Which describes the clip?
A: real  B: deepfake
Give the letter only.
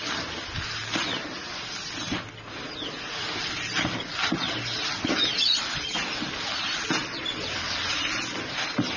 A